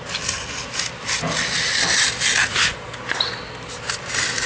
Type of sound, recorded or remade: recorded